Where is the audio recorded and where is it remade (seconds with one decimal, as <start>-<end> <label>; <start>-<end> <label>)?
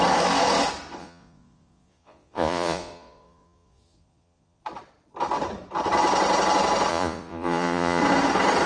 0.0-1.0 recorded; 1.0-4.6 remade; 4.6-6.9 recorded; 6.9-8.0 remade; 8.0-8.7 recorded